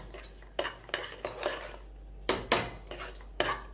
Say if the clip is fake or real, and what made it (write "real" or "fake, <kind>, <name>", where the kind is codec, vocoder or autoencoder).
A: real